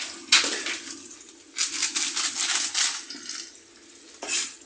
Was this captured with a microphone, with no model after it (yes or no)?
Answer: yes